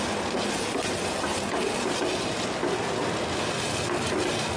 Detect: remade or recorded recorded